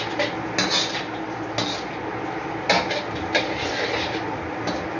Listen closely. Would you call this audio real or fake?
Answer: real